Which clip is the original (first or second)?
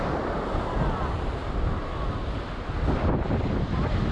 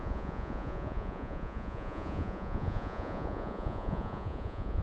first